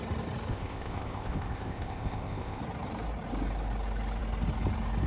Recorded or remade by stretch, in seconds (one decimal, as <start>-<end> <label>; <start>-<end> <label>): 0.0-0.5 recorded; 0.5-2.6 remade; 2.6-5.1 recorded